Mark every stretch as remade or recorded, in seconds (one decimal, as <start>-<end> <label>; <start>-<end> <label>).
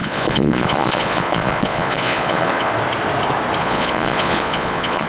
0.0-2.7 remade; 2.7-3.6 recorded; 3.6-5.1 remade